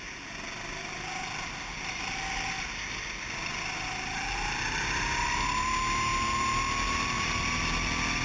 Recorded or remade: recorded